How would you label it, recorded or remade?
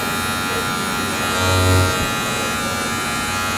recorded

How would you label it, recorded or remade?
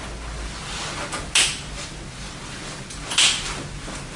recorded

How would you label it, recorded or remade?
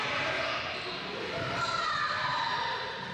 recorded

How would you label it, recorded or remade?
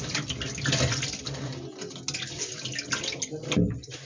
recorded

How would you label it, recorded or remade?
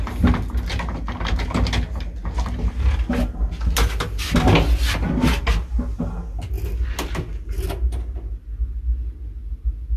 recorded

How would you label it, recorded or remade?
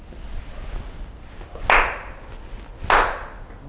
recorded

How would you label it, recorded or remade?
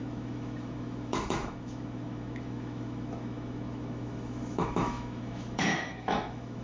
remade